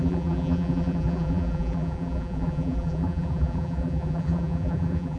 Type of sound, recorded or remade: remade